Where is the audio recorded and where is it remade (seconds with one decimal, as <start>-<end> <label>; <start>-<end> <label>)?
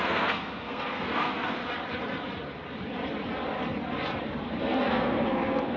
0.0-1.6 remade; 1.6-4.6 recorded; 4.6-5.8 remade